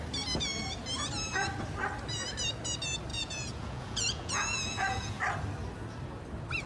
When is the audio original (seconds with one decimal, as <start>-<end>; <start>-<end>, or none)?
0.0-3.1; 5.2-6.7